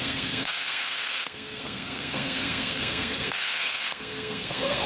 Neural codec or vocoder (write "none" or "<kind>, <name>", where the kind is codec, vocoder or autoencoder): codec, SNAC